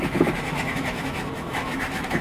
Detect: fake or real fake